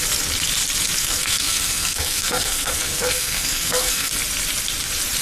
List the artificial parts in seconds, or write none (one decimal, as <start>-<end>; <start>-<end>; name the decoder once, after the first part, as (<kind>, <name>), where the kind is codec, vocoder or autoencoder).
1.0-4.1 (codec, SNAC)